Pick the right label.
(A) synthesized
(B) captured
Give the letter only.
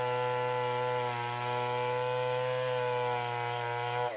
B